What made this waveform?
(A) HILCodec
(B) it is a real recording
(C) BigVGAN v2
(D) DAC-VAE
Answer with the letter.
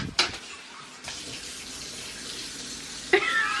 B